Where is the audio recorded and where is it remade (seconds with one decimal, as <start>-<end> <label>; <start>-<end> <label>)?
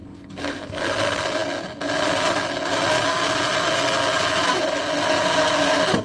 0.0-0.8 remade; 0.8-6.0 recorded